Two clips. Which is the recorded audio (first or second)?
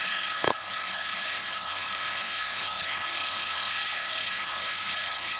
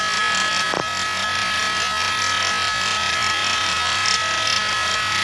second